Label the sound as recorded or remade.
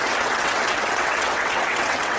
remade